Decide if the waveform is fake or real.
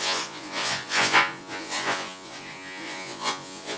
fake